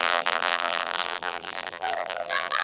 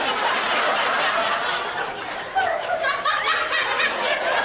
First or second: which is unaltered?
second